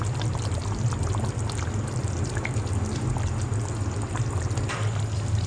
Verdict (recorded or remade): recorded